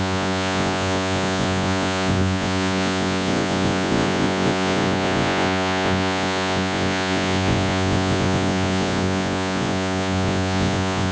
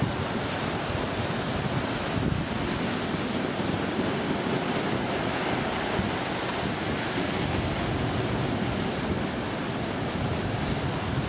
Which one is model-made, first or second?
first